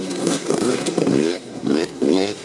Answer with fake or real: fake